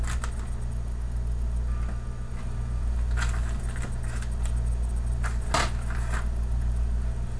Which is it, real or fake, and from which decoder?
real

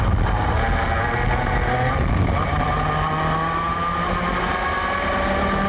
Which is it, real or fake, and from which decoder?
real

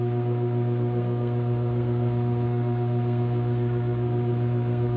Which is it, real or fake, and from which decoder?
fake, codec, SNAC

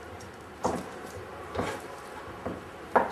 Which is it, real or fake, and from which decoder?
fake, vocoder, BigVGAN v2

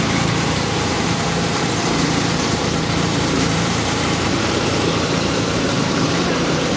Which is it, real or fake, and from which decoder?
fake, vocoder, BigVGAN v2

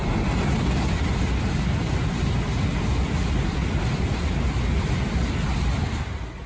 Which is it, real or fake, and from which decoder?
real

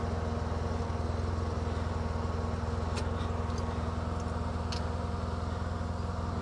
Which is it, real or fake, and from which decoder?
real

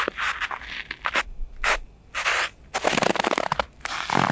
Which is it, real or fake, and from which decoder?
real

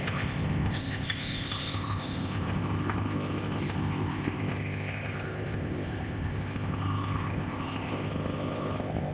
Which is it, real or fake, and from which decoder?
fake, codec, ZipCodec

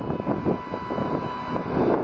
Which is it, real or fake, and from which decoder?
real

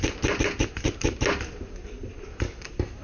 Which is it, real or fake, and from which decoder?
real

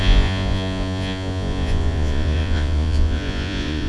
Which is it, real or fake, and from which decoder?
fake, vocoder, Vocos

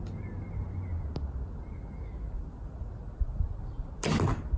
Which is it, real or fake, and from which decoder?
real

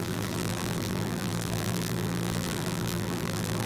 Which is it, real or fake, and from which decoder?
fake, vocoder, BigVGAN v2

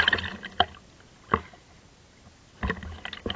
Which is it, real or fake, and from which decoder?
real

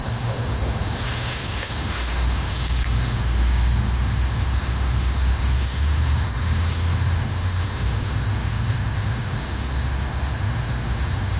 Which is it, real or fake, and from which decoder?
fake, autoencoder, DAC-VAE